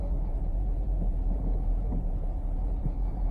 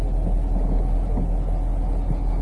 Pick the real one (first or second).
second